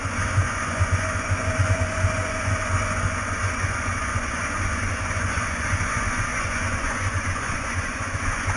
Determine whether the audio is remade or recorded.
remade